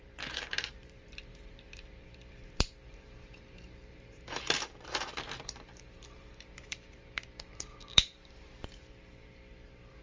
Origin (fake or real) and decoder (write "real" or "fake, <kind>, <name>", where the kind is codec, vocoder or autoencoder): fake, vocoder, BigVGAN v2